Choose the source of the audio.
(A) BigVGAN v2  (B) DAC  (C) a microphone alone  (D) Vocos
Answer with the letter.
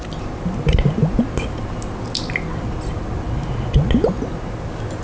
C